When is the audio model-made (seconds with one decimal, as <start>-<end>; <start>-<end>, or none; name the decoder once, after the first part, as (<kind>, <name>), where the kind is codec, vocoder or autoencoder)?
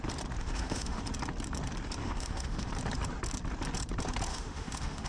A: 0.4-1.0 (autoencoder, DAC-VAE); 2.0-2.7; 4.3-5.1